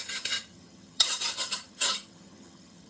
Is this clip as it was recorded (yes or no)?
no